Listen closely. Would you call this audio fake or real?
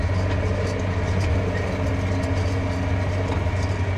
real